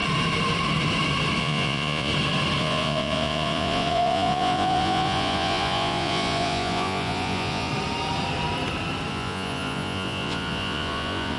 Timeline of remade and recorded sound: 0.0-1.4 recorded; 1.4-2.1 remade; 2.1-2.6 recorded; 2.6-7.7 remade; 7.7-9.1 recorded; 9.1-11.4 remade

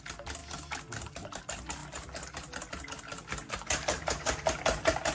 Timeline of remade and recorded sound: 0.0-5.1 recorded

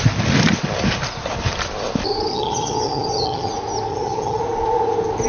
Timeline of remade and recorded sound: 0.0-2.3 recorded; 2.3-3.5 remade; 3.5-3.9 recorded; 3.9-4.4 remade; 4.4-5.3 recorded